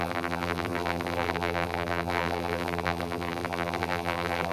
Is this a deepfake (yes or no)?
yes